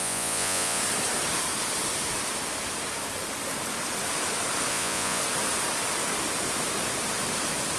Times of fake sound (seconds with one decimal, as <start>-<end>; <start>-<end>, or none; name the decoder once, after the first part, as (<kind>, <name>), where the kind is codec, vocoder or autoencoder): 0.0-0.8 (vocoder, Vocos); 4.7-5.2